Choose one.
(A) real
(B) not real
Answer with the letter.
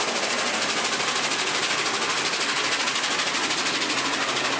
A